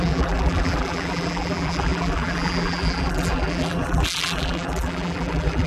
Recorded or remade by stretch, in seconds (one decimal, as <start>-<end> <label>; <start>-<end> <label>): 0.0-5.7 remade